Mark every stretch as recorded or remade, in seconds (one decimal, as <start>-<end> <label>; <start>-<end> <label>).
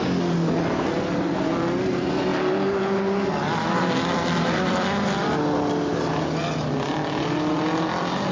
0.0-8.3 recorded